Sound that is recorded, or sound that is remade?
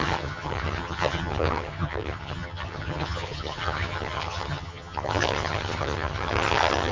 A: remade